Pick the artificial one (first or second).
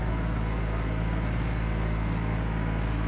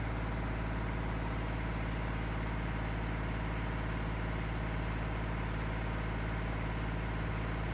first